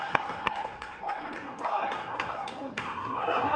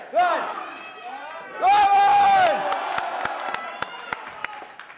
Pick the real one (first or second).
second